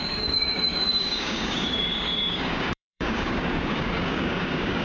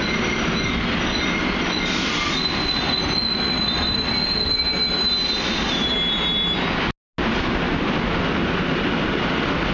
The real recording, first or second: second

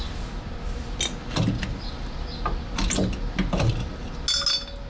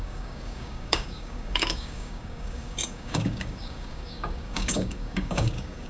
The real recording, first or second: first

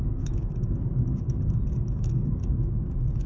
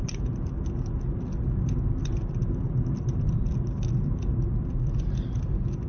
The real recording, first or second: second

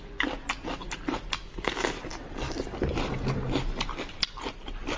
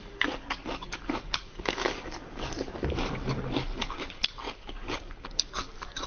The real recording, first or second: first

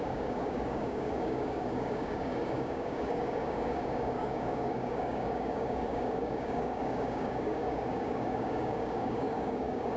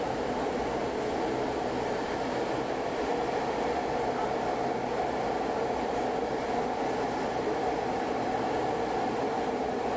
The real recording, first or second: second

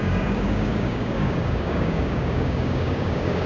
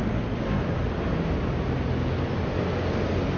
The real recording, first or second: second